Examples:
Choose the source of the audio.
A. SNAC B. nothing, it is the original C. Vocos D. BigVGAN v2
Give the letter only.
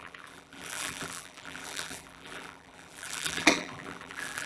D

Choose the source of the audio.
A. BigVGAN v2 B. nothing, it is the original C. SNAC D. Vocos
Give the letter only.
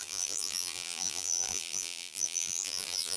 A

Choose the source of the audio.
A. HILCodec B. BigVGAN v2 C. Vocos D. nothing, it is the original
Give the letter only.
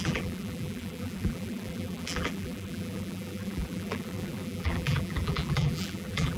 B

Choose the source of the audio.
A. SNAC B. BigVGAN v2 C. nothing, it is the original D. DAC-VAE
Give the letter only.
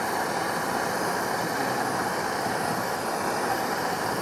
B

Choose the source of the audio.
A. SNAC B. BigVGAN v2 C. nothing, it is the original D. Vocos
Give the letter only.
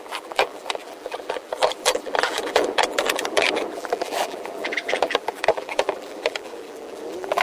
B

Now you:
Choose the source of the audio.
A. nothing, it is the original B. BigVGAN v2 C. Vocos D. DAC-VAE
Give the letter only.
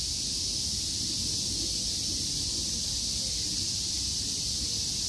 A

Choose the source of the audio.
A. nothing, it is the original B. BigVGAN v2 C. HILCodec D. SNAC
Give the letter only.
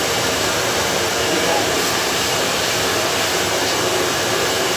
B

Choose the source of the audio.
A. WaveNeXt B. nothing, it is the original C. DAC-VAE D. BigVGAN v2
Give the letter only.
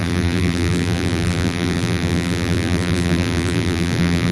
D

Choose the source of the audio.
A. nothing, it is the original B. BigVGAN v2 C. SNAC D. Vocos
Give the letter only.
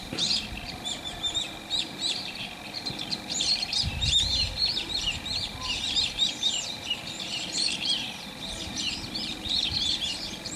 B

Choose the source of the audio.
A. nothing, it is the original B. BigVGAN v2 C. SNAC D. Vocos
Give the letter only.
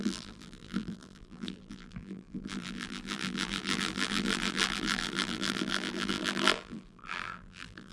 B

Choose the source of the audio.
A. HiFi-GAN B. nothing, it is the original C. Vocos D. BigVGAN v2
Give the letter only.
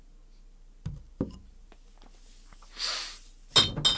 B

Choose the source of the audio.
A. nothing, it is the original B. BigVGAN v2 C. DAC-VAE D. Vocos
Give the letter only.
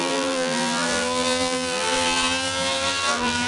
B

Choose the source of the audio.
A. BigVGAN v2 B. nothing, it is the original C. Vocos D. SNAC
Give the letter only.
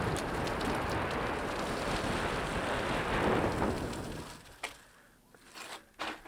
B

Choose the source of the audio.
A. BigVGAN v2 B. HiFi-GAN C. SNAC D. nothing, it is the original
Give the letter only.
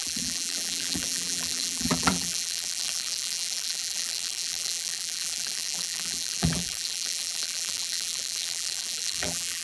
A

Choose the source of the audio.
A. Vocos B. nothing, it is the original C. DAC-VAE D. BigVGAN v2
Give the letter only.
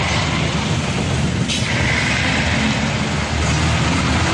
B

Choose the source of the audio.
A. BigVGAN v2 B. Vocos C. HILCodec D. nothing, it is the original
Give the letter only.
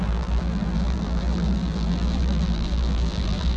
A